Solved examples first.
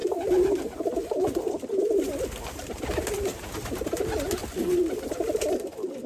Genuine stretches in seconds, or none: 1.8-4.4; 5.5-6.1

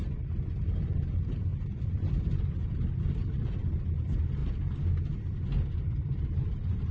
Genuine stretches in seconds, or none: 4.4-5.7

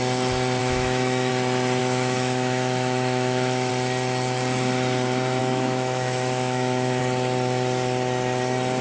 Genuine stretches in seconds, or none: 0.0-0.6; 1.3-1.8; 3.7-5.4; 7.0-8.8

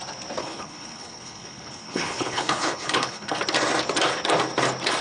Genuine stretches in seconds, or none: 0.0-0.4; 3.4-5.0

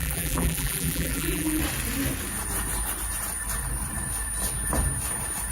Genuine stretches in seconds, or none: 1.6-5.5